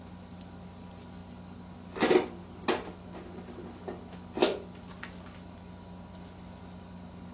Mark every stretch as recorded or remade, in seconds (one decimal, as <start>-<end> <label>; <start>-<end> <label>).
0.0-7.3 recorded